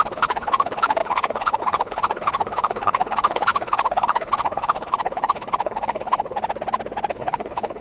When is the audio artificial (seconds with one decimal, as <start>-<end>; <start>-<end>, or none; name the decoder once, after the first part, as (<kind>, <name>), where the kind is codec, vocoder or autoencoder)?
0.0-6.4 (codec, HILCodec); 7.1-7.8

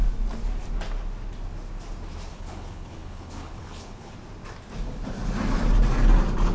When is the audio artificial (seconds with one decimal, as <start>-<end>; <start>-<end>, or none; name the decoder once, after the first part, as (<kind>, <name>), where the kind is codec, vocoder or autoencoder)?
2.3-4.1 (codec, HILCodec)

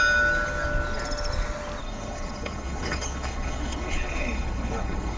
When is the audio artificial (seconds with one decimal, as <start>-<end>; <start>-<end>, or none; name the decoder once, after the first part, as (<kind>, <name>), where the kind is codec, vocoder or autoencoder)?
1.8-5.2 (codec, HILCodec)